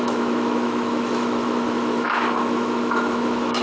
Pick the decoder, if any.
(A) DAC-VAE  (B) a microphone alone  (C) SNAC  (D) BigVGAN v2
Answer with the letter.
A